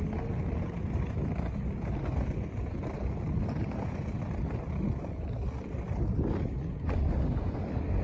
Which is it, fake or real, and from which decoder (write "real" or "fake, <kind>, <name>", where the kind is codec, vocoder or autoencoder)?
real